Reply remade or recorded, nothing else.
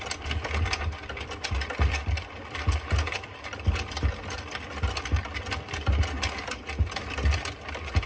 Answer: recorded